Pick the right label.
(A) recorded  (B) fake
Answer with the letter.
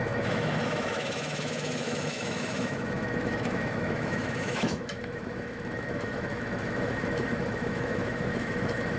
B